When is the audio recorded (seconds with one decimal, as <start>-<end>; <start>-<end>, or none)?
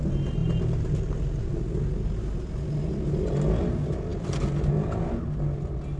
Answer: 0.0-0.4; 1.6-6.0